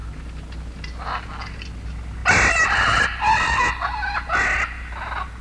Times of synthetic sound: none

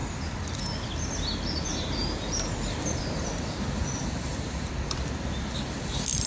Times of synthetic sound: 0.0-0.6; 1.7-3.0; 4.0-4.7

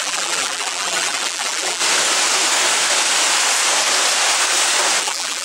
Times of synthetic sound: 0.0-1.8; 5.0-5.4

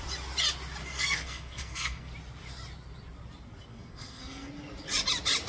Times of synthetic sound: 0.9-2.1; 3.7-4.5

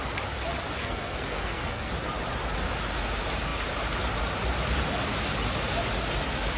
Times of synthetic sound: 0.8-1.9

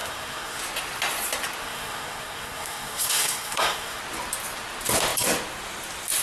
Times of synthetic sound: 0.0-0.6; 1.6-4.0